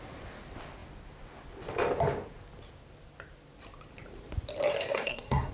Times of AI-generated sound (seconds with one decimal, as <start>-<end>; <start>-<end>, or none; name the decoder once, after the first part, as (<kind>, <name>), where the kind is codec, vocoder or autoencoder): 4.7-5.5 (codec, SNAC)